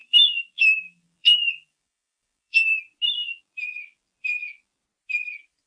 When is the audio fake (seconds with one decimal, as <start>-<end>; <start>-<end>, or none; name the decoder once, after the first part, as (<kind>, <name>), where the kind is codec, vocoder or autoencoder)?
0.0-2.8 (vocoder, BigVGAN v2); 3.2-4.8